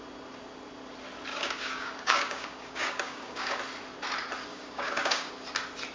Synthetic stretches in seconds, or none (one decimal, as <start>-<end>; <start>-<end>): 1.3-3.6; 4.5-5.3